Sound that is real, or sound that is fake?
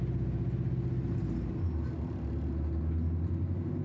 real